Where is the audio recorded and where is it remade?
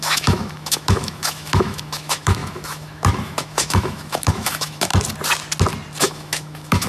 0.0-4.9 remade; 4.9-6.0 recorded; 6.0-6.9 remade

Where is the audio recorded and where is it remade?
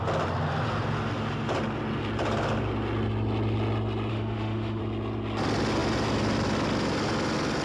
0.0-4.1 recorded; 4.1-4.8 remade; 4.8-7.6 recorded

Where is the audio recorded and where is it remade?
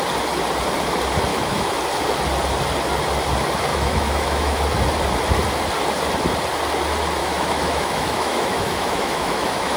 0.0-1.3 recorded; 1.3-1.8 remade; 1.8-3.7 recorded; 3.7-4.6 remade; 4.6-7.2 recorded; 7.2-9.8 remade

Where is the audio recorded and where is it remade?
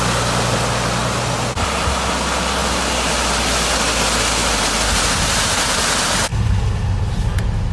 0.0-7.7 recorded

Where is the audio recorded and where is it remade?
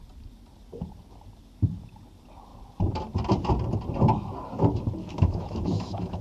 0.0-5.0 recorded; 5.0-6.2 remade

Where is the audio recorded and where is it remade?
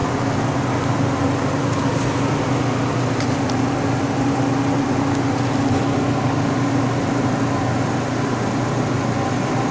0.0-9.7 recorded